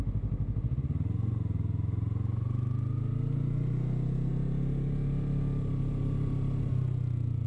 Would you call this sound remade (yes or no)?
no